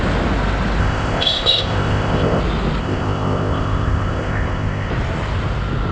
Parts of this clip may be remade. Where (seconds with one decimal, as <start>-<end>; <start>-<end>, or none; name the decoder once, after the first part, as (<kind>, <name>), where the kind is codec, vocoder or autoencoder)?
0.8-2.4 (codec, ZipCodec); 2.8-4.9